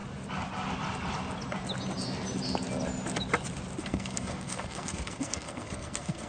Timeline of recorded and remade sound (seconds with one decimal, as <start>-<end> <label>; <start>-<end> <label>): 0.0-3.8 recorded; 3.8-6.3 remade